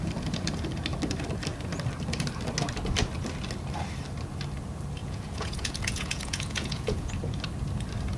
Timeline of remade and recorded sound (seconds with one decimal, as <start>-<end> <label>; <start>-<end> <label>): 0.0-5.0 recorded; 5.0-7.1 remade; 7.1-8.2 recorded